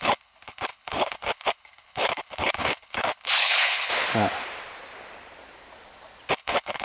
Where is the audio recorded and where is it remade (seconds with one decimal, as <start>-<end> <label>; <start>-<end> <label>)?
0.0-3.9 remade; 3.9-6.3 recorded; 6.3-6.8 remade